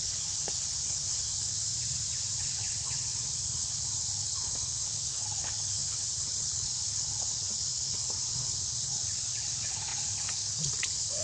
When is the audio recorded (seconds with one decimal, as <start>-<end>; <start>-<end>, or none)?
1.7-2.4

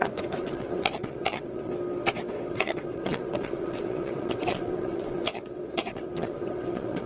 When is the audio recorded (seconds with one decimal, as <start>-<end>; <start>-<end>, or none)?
1.7-2.5

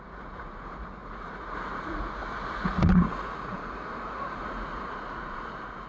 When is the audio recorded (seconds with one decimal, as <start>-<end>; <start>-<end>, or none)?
none

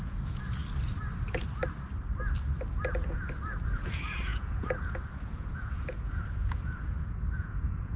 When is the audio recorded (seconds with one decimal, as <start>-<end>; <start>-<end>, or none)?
0.6-3.6